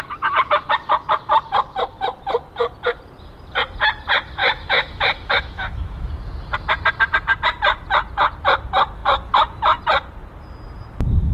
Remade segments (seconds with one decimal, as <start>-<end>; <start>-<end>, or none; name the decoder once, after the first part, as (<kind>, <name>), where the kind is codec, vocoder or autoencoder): 4.4-6.1 (autoencoder, DAC-VAE)